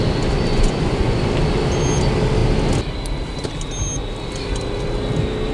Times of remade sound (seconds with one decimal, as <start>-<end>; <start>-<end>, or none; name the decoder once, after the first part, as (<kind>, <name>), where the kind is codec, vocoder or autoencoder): 0.5-1.2 (vocoder, Vocos)